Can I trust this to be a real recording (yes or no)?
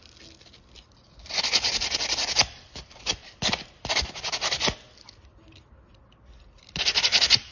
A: yes